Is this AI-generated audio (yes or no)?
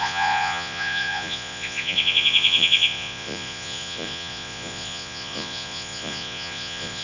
yes